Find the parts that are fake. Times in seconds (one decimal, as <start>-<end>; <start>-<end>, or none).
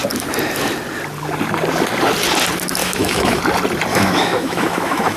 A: 2.8-3.4; 3.9-5.2